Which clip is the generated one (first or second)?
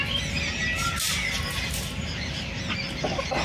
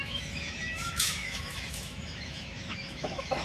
second